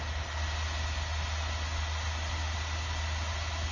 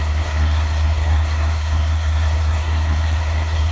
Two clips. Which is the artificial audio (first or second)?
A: second